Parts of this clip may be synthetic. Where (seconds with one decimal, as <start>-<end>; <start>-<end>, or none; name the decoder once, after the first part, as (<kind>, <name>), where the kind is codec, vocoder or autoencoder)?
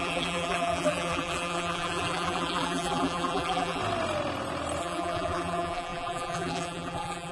0.0-3.8 (vocoder, BigVGAN v2); 4.8-7.3